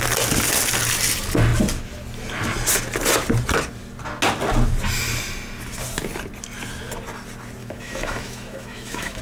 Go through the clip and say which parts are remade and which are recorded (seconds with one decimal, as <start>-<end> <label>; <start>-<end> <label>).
0.0-7.6 recorded; 7.6-9.2 remade